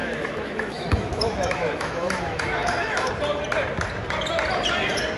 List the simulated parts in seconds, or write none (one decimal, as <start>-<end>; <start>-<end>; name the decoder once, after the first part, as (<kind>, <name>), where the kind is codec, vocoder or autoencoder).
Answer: 0.0-3.1 (autoencoder, DAC-VAE)